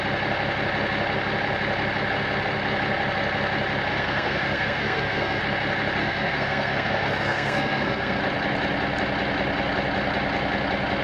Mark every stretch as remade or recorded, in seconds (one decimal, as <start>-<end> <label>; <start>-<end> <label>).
0.0-3.9 recorded; 3.9-5.4 remade; 5.4-6.0 recorded; 6.0-8.2 remade; 8.2-11.0 recorded